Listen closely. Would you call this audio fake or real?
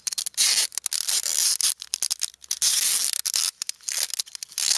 real